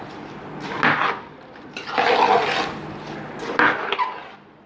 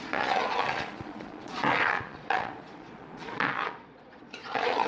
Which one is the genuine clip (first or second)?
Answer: first